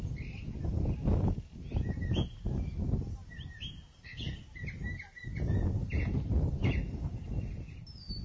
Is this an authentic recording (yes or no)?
yes